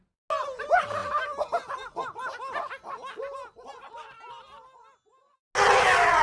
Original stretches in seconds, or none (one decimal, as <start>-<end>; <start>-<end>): 0.0-6.2